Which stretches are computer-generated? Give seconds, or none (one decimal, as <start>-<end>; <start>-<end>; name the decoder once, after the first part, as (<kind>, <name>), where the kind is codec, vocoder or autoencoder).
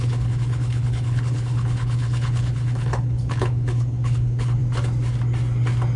0.0-4.6 (codec, HILCodec)